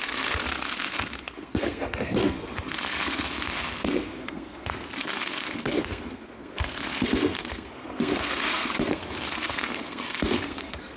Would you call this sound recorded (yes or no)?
no